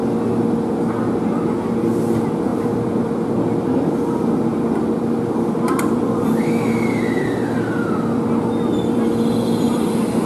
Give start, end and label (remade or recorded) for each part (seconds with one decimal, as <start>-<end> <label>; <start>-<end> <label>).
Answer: 0.0-2.5 recorded; 2.5-3.1 remade; 3.1-4.5 recorded; 4.5-6.4 remade; 6.4-10.3 recorded